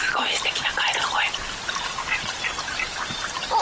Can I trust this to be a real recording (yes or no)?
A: yes